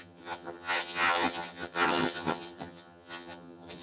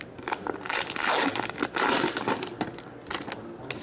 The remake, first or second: first